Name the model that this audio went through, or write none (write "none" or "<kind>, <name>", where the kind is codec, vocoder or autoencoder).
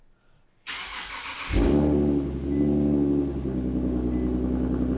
none